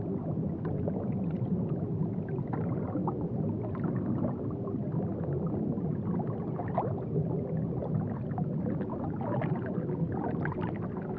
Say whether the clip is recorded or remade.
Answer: recorded